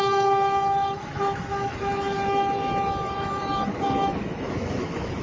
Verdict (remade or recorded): remade